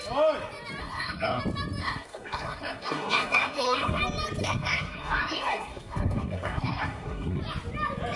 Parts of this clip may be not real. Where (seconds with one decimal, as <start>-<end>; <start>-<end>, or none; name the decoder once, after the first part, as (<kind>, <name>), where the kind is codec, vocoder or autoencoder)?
0.8-1.4 (codec, SNAC); 1.8-4.0; 4.4-7.4